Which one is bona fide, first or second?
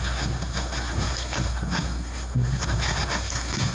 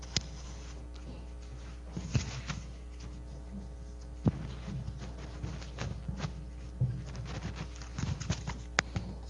second